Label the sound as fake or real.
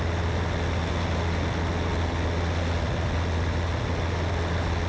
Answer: real